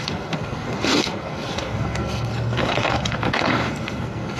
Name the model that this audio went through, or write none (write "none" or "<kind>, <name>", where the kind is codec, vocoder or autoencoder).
codec, SNAC